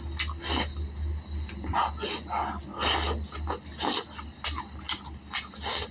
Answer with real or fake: real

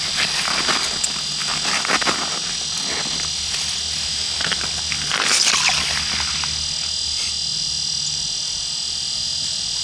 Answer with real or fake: real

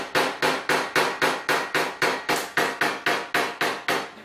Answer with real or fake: real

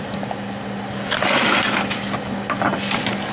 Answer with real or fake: real